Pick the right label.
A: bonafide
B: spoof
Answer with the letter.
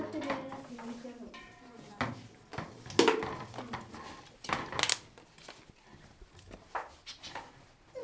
A